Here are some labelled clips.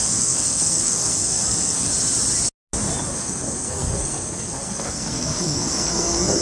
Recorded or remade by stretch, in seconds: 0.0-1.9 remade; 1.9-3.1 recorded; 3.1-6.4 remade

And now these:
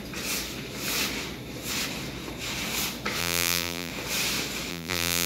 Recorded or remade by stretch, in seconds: 0.0-3.2 recorded; 3.2-3.9 remade; 3.9-4.7 recorded; 4.7-5.3 remade

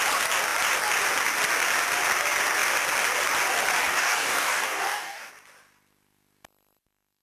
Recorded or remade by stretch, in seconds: 0.0-3.8 recorded; 3.8-5.3 remade; 5.3-7.2 recorded